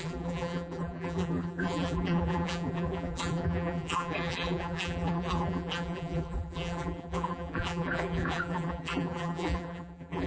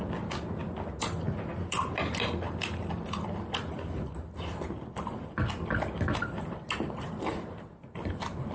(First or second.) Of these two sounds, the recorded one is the second